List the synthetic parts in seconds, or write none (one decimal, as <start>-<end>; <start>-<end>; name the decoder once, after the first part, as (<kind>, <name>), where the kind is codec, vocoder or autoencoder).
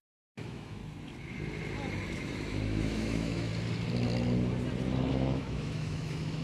0.0-0.8 (autoencoder, DAC-VAE); 2.2-3.5; 5.1-6.4